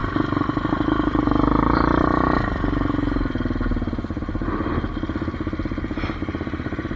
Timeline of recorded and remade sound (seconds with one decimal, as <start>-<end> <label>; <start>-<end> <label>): 0.0-7.0 recorded